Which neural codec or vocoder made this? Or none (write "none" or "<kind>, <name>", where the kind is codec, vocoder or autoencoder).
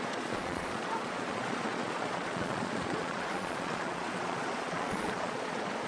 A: vocoder, Vocos